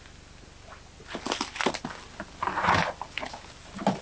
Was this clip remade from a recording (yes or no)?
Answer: no